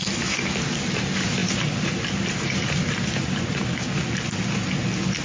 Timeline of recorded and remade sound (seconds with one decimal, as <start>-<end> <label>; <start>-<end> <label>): 0.0-1.4 recorded; 1.4-3.7 remade; 3.7-5.2 recorded